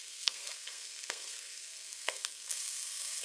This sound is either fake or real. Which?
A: fake